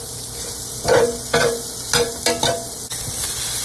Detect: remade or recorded recorded